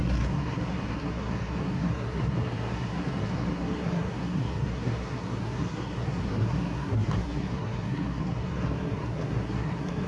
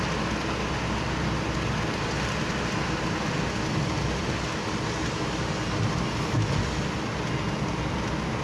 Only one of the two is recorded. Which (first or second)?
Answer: second